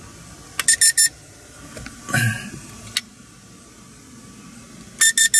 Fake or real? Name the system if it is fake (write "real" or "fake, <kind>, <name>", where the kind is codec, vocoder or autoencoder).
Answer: real